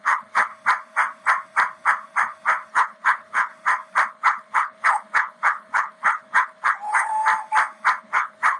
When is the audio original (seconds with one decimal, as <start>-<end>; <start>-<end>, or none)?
0.5-2.7; 3.5-4.1; 7.1-8.0